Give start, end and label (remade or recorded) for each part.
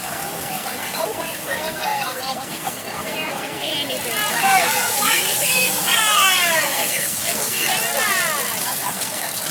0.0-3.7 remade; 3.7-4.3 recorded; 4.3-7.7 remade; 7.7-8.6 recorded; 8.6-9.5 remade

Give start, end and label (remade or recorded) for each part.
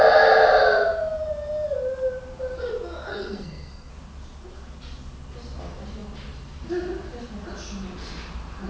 0.0-3.1 recorded; 3.1-3.9 remade; 3.9-8.7 recorded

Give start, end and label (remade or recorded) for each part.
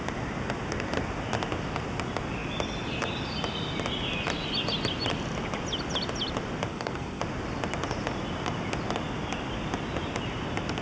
0.0-6.7 recorded; 6.7-7.2 remade; 7.2-10.8 recorded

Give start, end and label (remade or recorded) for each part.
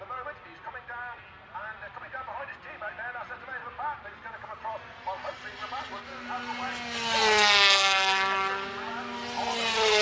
0.0-10.0 recorded